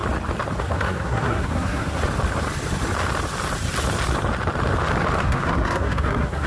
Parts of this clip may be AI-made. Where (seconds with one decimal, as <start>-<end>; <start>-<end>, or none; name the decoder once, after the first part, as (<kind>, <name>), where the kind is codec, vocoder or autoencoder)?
0.6-2.0 (codec, SNAC); 5.2-6.5